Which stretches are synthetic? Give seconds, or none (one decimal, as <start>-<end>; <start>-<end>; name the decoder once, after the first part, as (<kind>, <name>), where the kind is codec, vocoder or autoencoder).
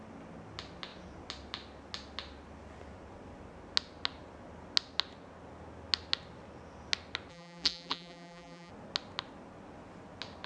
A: 7.3-8.7 (vocoder, BigVGAN v2)